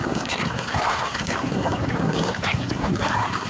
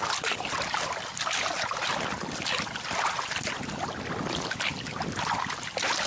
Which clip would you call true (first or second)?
second